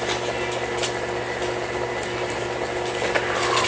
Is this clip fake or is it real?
real